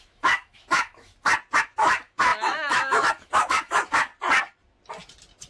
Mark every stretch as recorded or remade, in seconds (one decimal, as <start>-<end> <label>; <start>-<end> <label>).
0.0-1.1 remade; 1.1-1.6 recorded; 1.6-4.1 remade; 4.1-5.5 recorded